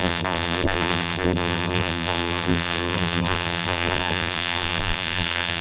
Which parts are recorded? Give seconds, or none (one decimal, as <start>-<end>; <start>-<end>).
none